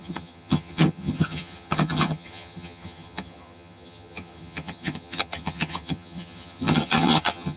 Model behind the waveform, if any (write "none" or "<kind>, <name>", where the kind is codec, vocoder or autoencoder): vocoder, HiFi-GAN